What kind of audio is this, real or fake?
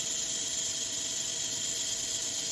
real